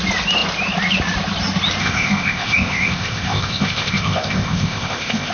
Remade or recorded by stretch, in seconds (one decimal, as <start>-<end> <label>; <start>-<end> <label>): 0.0-1.8 recorded; 1.8-5.3 remade